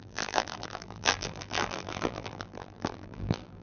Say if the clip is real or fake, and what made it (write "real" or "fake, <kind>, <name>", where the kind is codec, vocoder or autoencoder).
fake, vocoder, BigVGAN v2